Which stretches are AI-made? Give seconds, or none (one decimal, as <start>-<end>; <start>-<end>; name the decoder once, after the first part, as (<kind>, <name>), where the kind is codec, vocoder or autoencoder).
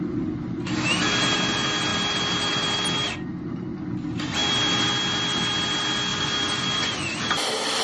6.1-7.3 (vocoder, Vocos)